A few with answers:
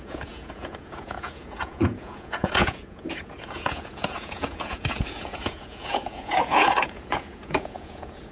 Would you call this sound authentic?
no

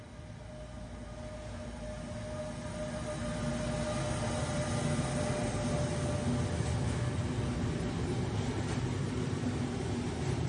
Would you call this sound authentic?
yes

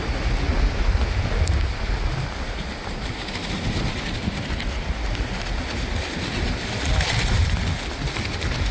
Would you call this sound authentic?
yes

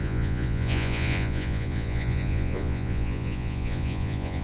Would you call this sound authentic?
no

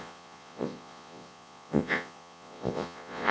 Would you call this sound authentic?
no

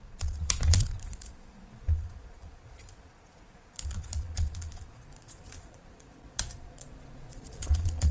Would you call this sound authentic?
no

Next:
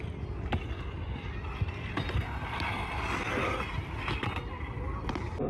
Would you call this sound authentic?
yes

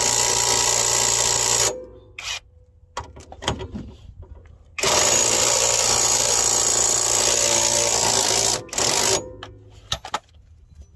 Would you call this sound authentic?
yes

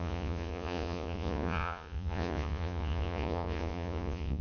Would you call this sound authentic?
no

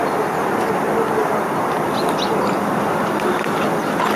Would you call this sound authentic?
yes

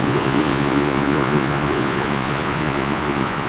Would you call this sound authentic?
no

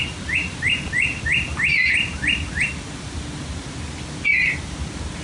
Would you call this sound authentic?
yes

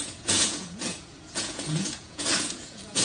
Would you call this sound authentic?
no